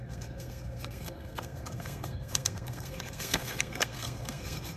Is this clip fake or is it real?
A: fake